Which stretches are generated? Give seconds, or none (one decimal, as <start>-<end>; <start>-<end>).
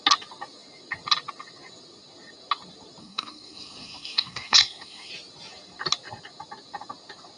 3.0-5.1